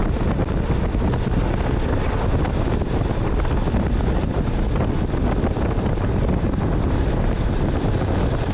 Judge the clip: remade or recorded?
recorded